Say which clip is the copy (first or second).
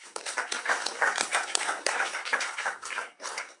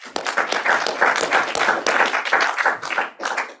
first